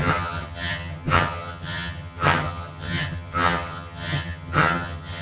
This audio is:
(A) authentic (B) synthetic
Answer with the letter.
B